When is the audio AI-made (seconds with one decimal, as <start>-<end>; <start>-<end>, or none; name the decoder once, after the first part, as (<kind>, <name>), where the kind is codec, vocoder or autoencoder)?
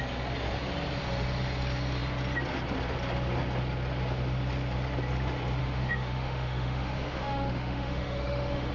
5.6-8.7 (autoencoder, DAC-VAE)